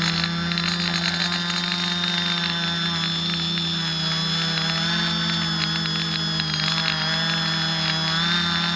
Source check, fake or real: real